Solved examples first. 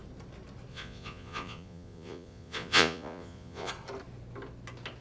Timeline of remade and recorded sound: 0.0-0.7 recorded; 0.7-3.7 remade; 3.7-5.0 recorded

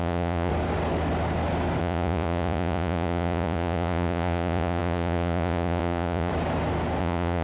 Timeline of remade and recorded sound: 0.0-0.5 remade; 0.5-1.8 recorded; 1.8-6.3 remade; 6.3-7.0 recorded; 7.0-7.4 remade

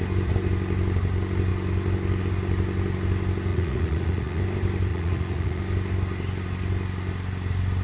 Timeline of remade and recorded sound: 0.0-3.5 recorded; 3.5-4.4 remade; 4.4-4.9 recorded; 4.9-5.6 remade; 5.6-7.8 recorded

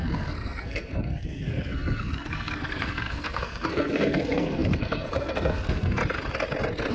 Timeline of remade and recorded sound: 0.0-6.0 remade; 6.0-6.9 recorded

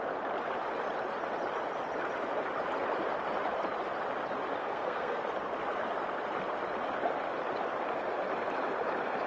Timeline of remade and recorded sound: 0.0-4.6 recorded; 4.6-5.2 remade; 5.2-9.3 recorded

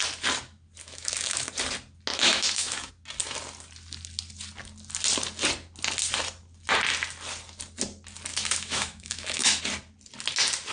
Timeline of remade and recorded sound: 0.0-0.8 recorded; 0.8-1.5 remade; 1.5-2.1 recorded; 2.1-2.9 remade; 2.9-8.3 recorded; 8.3-9.6 remade; 9.6-10.7 recorded

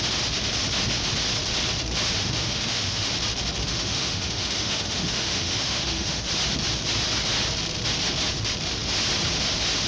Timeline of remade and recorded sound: 0.0-2.2 recorded; 2.2-3.1 remade; 3.1-3.6 recorded; 3.6-6.3 remade; 6.3-9.9 recorded